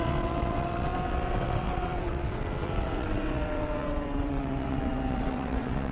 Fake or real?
fake